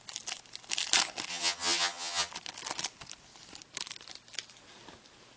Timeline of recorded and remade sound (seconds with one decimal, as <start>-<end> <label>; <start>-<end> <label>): 0.0-1.3 recorded; 1.3-2.3 remade; 2.3-5.4 recorded

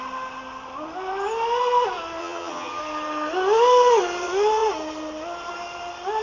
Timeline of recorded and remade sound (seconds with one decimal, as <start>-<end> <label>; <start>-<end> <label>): 0.0-2.2 recorded; 2.2-2.8 remade; 2.8-6.2 recorded

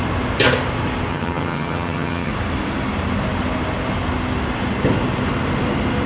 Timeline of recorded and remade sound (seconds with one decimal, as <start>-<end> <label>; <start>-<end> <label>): 0.0-1.1 recorded; 1.1-2.3 remade; 2.3-6.1 recorded